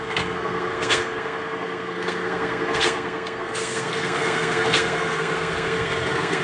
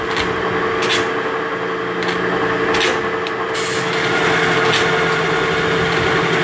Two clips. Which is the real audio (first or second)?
second